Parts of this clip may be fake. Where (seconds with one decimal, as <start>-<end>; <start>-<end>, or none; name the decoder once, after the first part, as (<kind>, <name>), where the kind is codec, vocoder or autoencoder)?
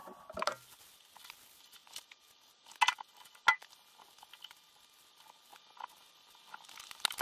none